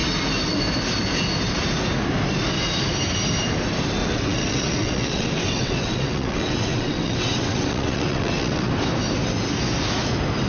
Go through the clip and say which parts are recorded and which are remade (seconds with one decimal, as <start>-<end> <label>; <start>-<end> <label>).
0.0-4.0 recorded; 4.0-8.7 remade; 8.7-10.5 recorded

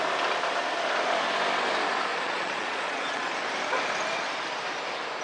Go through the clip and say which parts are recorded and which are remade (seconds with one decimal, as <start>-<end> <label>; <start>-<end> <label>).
0.0-2.1 recorded; 2.1-3.3 remade; 3.3-5.2 recorded

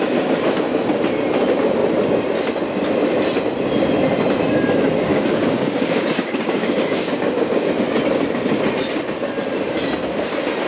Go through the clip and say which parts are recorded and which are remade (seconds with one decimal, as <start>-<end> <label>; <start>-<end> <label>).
0.0-5.1 recorded; 5.1-7.7 remade; 7.7-10.7 recorded

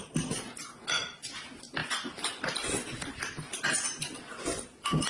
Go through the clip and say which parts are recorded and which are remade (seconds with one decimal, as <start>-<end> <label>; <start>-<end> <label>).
0.0-5.1 recorded

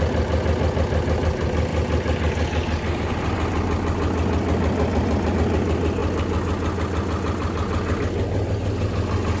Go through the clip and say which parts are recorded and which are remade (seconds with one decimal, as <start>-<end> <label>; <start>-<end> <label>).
0.0-9.4 recorded

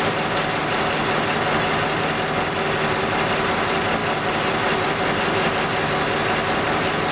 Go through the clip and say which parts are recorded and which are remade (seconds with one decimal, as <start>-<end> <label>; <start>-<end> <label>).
0.0-7.1 recorded

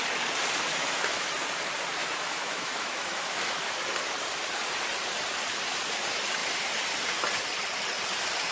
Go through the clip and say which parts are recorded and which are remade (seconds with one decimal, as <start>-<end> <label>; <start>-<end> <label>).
0.0-0.7 recorded; 0.7-1.3 remade; 1.3-2.0 recorded; 2.0-3.8 remade; 3.8-8.5 recorded

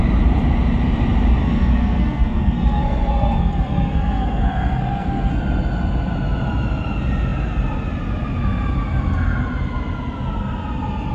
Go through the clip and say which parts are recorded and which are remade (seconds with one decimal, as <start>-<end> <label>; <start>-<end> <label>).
0.0-1.4 recorded; 1.4-5.3 remade; 5.3-11.1 recorded